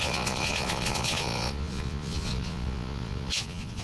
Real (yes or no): no